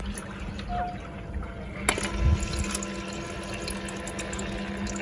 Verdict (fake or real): real